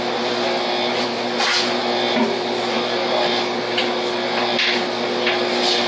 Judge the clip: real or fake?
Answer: real